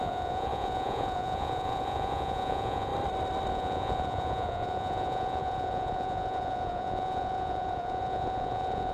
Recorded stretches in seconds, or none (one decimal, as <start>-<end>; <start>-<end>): 2.9-3.5